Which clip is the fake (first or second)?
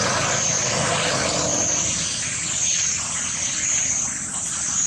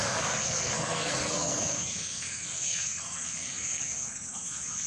second